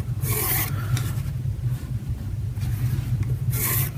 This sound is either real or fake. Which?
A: real